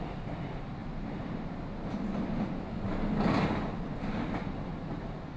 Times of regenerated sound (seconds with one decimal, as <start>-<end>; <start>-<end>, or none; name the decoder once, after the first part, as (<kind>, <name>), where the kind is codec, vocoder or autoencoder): 0.8-1.5 (vocoder, BigVGAN v2); 4.7-5.4